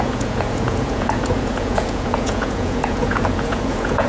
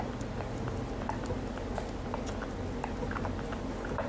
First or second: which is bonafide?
second